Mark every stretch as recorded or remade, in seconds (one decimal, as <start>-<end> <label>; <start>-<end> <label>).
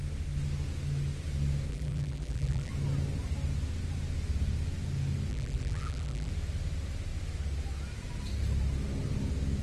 0.0-1.7 recorded; 1.7-2.7 remade; 2.7-5.3 recorded; 5.3-6.3 remade; 6.3-9.6 recorded